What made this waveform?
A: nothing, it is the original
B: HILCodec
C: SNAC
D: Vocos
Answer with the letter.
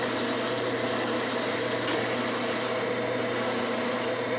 A